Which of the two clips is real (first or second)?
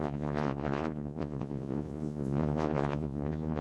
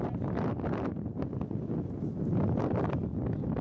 second